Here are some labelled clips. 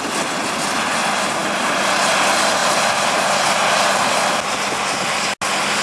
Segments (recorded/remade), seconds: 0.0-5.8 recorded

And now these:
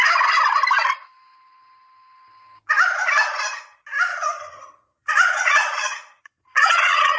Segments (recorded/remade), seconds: 0.0-4.1 recorded; 4.1-7.2 remade

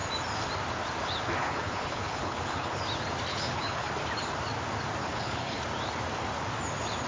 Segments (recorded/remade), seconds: 0.0-1.4 recorded; 1.4-2.8 remade; 2.8-3.3 recorded; 3.3-3.9 remade; 3.9-5.0 recorded; 5.0-5.6 remade; 5.6-7.1 recorded

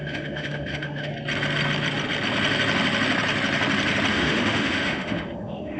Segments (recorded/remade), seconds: 0.0-1.1 remade; 1.1-4.1 recorded; 4.1-5.8 remade